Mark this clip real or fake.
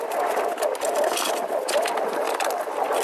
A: real